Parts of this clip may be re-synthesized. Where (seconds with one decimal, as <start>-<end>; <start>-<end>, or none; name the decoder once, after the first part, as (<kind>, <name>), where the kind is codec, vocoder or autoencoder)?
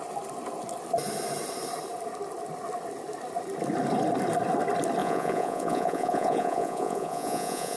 5.0-7.8 (vocoder, Vocos)